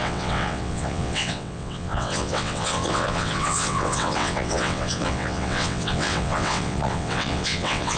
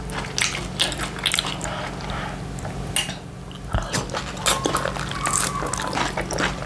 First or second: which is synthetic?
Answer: first